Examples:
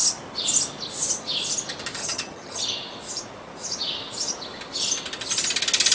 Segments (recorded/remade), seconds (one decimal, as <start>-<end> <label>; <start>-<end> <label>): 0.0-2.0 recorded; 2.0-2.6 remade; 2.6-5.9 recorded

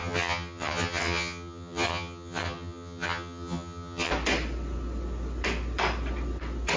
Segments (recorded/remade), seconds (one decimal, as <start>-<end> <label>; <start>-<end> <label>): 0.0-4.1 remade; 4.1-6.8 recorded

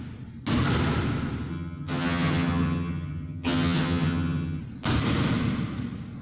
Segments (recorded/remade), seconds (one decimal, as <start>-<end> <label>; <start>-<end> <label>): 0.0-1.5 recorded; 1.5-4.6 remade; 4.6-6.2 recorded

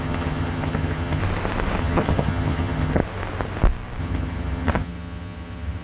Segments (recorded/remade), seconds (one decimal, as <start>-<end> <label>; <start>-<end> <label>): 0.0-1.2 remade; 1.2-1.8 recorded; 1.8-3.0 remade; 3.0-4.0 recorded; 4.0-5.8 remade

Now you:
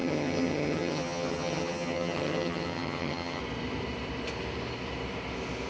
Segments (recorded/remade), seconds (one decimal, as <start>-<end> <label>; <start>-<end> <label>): 0.0-3.4 remade; 3.4-5.7 recorded

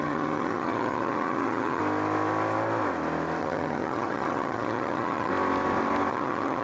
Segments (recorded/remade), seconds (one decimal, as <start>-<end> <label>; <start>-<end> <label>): 0.0-1.8 remade; 1.8-3.4 recorded; 3.4-5.3 remade; 5.3-6.1 recorded; 6.1-6.6 remade